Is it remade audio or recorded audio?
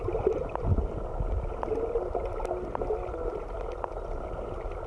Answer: recorded